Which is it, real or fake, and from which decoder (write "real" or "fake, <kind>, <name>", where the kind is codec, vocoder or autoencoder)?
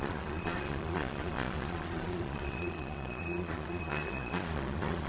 fake, vocoder, Vocos